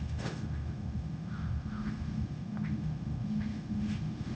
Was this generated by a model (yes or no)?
yes